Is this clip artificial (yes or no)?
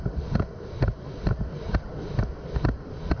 no